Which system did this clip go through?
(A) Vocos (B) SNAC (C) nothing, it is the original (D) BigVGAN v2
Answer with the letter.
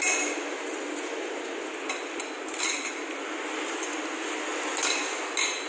C